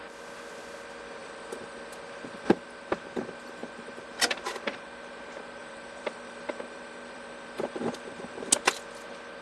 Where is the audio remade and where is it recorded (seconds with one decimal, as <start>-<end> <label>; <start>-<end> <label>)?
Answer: 0.0-1.2 recorded; 1.2-1.8 remade; 1.8-5.6 recorded; 5.6-8.5 remade; 8.5-9.4 recorded